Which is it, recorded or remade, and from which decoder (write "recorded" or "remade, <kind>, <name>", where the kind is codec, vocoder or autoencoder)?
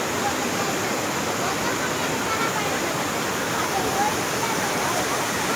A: recorded